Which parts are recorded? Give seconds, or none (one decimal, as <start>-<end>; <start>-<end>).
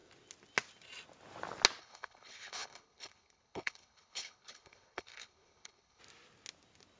0.0-1.8; 6.0-7.0